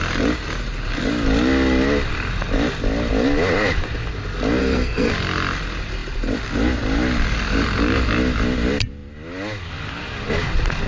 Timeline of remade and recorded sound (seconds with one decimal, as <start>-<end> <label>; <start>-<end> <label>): 0.0-4.6 recorded; 4.6-5.1 remade; 5.1-10.9 recorded